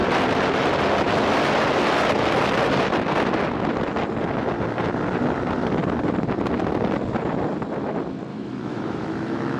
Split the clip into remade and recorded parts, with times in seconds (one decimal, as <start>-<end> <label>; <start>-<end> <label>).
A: 0.0-8.3 recorded; 8.3-9.6 remade

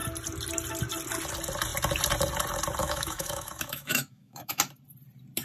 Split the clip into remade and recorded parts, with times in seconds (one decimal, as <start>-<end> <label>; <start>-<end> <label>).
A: 0.0-2.8 recorded; 2.8-4.6 remade; 4.6-5.4 recorded

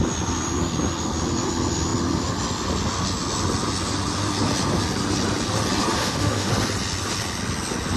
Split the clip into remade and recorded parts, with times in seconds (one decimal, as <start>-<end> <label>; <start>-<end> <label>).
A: 0.0-6.0 recorded; 6.0-6.5 remade; 6.5-8.0 recorded

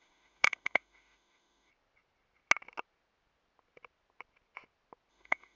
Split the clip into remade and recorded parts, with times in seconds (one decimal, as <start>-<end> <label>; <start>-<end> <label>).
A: 0.0-1.7 remade; 1.7-5.1 recorded; 5.1-5.6 remade

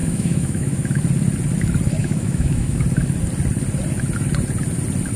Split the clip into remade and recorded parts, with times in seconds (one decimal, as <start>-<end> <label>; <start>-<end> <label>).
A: 0.0-1.0 remade; 1.0-2.0 recorded; 2.0-2.8 remade; 2.8-5.2 recorded

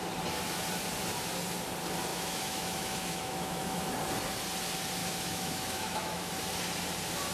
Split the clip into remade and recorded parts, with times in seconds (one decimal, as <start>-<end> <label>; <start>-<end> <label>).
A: 0.0-2.1 recorded; 2.1-3.9 remade; 3.9-5.0 recorded; 5.0-6.3 remade; 6.3-7.3 recorded